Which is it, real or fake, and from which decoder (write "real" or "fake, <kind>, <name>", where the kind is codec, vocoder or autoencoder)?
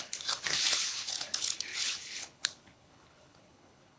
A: fake, codec, HILCodec